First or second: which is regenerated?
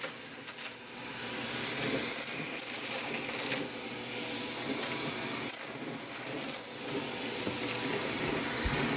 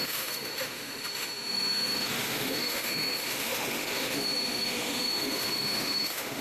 second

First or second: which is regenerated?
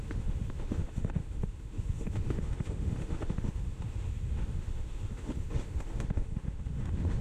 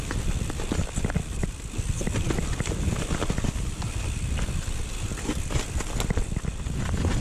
first